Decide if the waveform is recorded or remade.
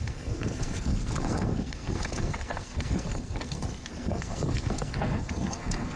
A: remade